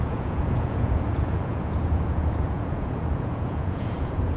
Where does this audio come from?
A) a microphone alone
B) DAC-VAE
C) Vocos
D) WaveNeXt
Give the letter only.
C